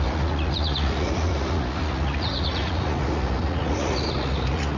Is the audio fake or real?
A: fake